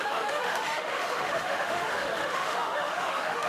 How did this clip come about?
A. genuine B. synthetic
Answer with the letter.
B